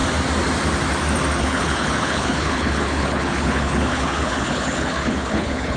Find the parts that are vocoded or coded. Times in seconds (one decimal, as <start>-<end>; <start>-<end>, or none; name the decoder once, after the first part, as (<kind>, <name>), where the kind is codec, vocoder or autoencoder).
1.4-5.8 (codec, HILCodec)